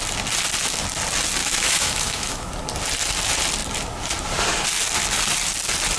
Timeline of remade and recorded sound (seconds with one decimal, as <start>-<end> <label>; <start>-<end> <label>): 0.0-1.4 recorded; 1.4-2.5 remade; 2.5-6.0 recorded